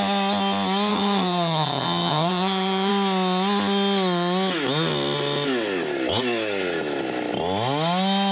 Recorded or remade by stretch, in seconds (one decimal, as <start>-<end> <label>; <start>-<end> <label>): 0.0-0.9 recorded; 0.9-2.9 remade; 2.9-8.3 recorded